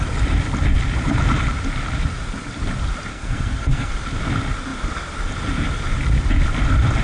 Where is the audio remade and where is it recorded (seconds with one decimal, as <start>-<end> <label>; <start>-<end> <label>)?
0.0-3.1 recorded; 3.1-3.9 remade; 3.9-7.0 recorded